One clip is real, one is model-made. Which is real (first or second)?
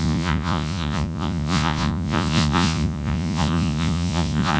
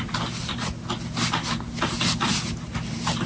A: second